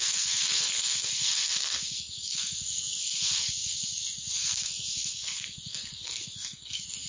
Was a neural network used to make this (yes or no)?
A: yes